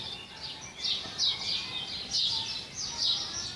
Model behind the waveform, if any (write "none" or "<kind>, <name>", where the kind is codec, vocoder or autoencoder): none